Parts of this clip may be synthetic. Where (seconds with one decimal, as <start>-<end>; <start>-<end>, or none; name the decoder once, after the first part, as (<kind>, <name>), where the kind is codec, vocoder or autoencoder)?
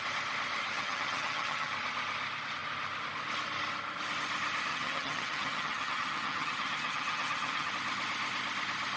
0.6-1.7 (vocoder, HiFi-GAN); 4.7-7.7